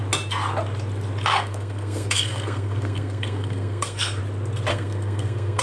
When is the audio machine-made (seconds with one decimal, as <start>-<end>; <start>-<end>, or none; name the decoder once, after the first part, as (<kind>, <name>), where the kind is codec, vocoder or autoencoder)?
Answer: 1.3-4.2 (codec, SNAC); 4.7-5.6